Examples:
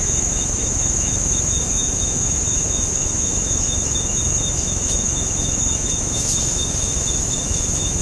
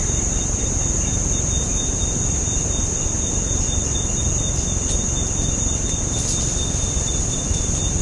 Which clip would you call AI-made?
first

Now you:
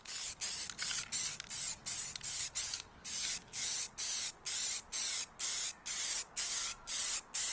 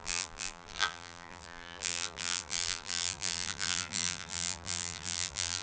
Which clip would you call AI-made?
second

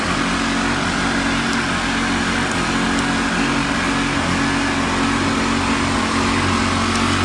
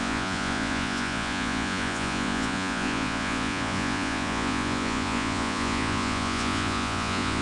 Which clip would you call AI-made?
second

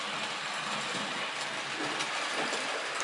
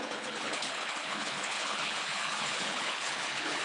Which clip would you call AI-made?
second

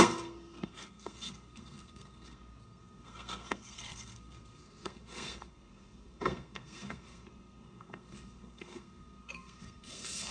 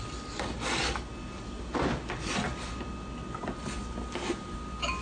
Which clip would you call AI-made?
first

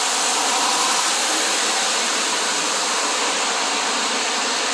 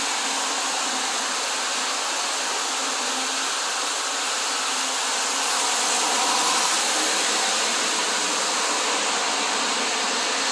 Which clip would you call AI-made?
first